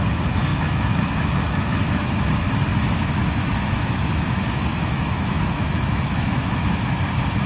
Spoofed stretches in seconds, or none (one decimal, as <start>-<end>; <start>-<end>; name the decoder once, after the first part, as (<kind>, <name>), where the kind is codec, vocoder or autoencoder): 0.5-2.3 (autoencoder, DAC-VAE); 2.7-7.0